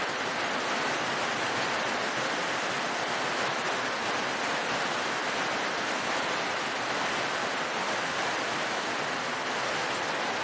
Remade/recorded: recorded